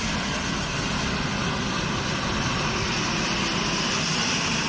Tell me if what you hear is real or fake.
real